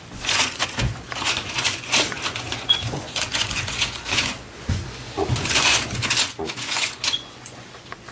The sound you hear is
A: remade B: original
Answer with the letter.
A